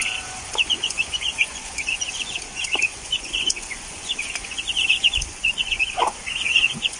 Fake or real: fake